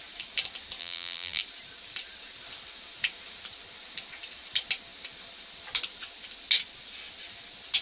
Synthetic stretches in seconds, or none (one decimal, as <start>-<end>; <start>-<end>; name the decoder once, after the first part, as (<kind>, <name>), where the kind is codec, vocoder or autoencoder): 0.8-1.4 (vocoder, BigVGAN v2)